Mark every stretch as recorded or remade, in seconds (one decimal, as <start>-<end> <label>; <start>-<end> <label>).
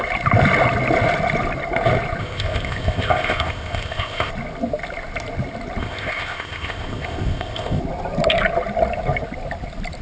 0.0-2.2 recorded; 2.2-4.3 remade; 4.3-5.8 recorded; 5.8-7.8 remade; 7.8-10.0 recorded